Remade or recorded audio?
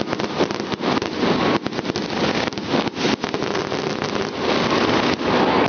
recorded